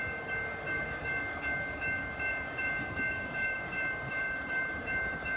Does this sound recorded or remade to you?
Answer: remade